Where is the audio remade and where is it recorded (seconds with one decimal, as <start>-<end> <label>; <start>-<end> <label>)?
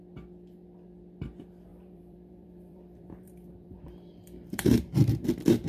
0.0-1.7 recorded; 1.7-5.1 remade; 5.1-5.7 recorded